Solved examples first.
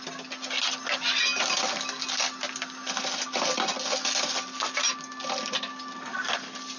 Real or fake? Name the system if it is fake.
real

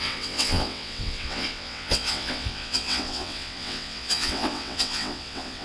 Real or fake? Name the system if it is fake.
fake, vocoder, WaveNeXt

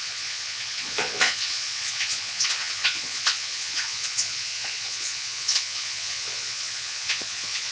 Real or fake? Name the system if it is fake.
fake, vocoder, Vocos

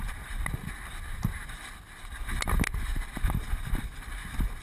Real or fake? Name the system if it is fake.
real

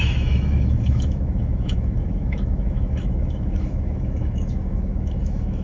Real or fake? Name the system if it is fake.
fake, autoencoder, DAC-VAE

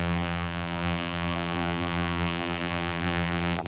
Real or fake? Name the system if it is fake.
fake, vocoder, BigVGAN v2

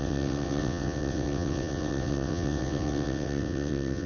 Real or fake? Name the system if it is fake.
fake, vocoder, WaveNeXt